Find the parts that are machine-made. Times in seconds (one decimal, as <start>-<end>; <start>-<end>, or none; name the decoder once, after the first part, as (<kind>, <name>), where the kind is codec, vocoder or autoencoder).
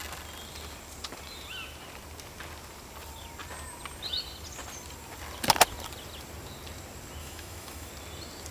7.2-7.9 (autoencoder, DAC-VAE)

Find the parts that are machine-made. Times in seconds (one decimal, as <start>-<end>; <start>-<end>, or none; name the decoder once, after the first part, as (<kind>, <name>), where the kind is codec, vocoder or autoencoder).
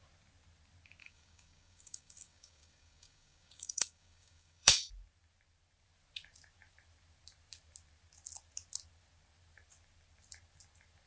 1.0-4.9 (codec, DAC)